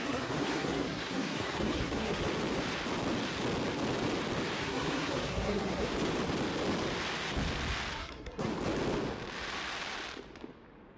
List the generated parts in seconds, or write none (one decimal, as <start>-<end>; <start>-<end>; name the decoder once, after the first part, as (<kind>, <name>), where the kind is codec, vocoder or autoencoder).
0.0-2.2 (codec, SNAC); 4.6-5.9; 7.9-8.5